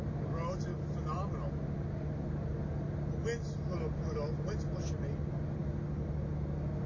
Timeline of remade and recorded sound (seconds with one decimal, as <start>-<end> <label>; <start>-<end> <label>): 0.0-6.9 recorded